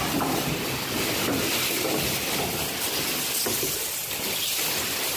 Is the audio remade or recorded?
recorded